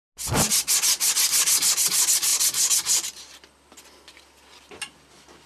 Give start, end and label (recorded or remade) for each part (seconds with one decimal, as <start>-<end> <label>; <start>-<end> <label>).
0.0-5.5 recorded